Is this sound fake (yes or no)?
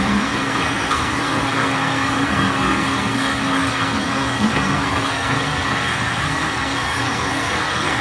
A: yes